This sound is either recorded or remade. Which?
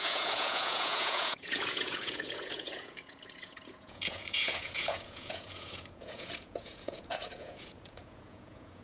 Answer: remade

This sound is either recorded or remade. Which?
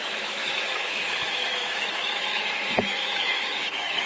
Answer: remade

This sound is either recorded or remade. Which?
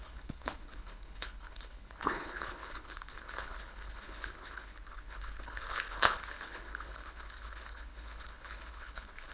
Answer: remade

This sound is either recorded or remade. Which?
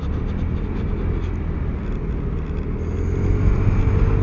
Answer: recorded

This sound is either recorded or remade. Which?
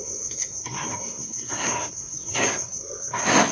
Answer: remade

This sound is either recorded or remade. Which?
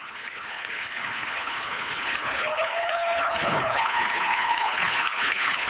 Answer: remade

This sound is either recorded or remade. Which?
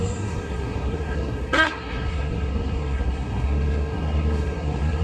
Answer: remade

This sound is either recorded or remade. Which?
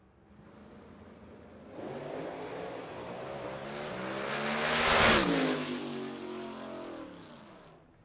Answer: recorded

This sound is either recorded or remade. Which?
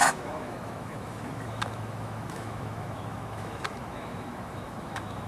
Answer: remade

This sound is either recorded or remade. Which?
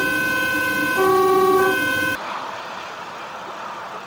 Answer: recorded